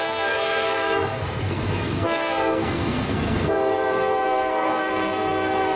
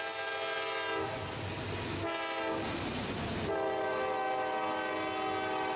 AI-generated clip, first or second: first